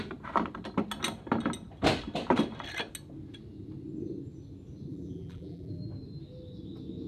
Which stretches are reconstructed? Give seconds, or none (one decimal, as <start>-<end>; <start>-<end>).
4.9-5.8

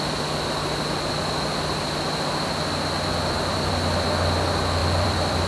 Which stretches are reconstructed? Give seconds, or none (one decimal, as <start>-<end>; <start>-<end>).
3.1-3.7; 4.8-5.5

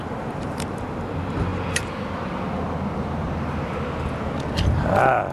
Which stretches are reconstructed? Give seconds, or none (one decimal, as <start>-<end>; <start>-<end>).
0.0-1.5; 4.7-5.3

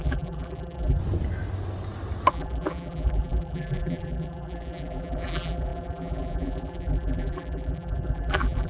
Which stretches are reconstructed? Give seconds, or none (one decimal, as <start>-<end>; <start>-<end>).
0.0-1.0; 2.3-8.7

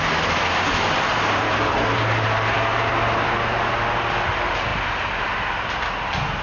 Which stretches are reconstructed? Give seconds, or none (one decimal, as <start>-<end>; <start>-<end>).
1.1-2.9